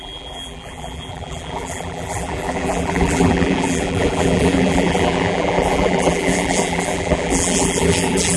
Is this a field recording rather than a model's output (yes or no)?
no